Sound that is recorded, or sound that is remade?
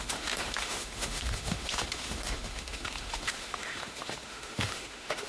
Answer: remade